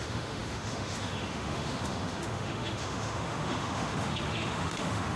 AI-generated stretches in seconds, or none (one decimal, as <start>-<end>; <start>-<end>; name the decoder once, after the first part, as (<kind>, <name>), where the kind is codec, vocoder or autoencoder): 0.0-5.2 (autoencoder, DAC-VAE)